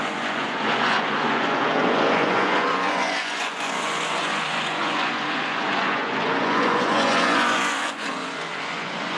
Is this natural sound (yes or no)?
no